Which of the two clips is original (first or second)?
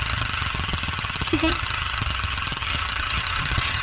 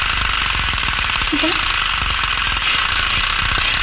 second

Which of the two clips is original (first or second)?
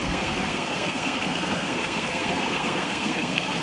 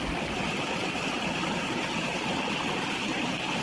second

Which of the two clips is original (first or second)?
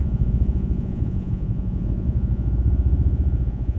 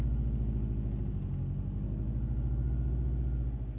second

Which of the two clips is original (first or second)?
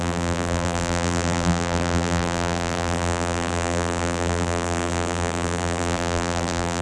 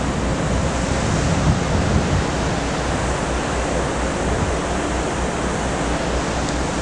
second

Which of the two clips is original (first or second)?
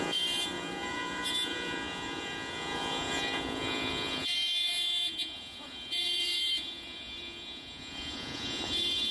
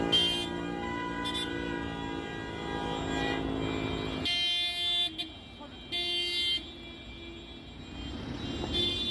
second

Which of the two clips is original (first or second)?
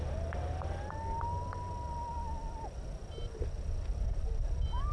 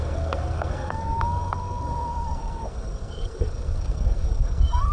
first